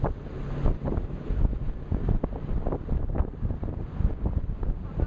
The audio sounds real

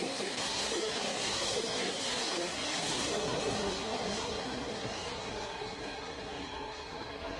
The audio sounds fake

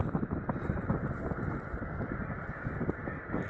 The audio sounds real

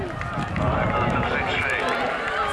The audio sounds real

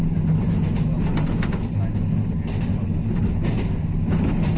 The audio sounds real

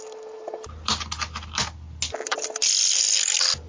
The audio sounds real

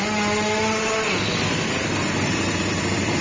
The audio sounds real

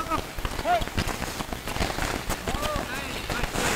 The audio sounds real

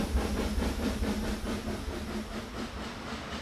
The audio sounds real